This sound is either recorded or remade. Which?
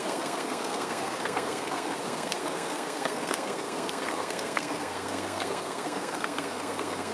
remade